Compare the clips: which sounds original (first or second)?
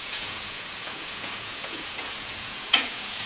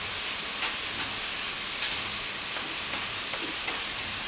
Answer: second